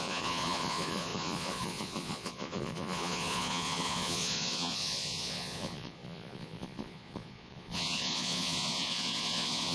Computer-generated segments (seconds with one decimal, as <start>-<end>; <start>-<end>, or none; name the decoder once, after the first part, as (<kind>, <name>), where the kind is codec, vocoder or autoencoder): 0.0-9.7 (vocoder, Vocos)